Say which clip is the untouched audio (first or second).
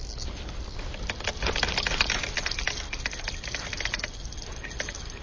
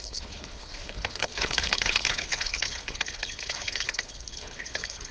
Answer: first